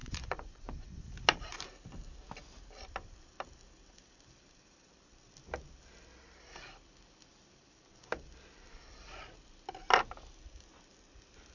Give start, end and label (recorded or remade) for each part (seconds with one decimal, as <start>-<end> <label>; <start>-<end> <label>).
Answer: 0.0-1.0 remade; 1.0-11.5 recorded

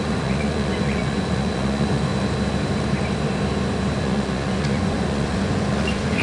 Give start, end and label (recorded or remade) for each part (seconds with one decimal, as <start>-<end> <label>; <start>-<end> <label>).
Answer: 0.0-2.1 remade; 2.1-4.0 recorded; 4.0-6.2 remade

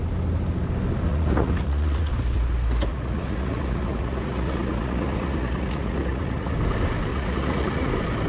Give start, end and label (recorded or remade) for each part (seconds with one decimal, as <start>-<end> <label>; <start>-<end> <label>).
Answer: 0.0-1.1 recorded; 1.1-2.1 remade; 2.1-2.9 recorded; 2.9-6.5 remade; 6.5-7.1 recorded; 7.1-7.9 remade; 7.9-8.3 recorded

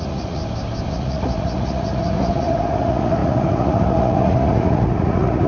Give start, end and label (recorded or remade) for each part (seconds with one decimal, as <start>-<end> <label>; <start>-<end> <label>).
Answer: 0.0-0.4 remade; 0.4-0.9 recorded; 0.9-5.5 remade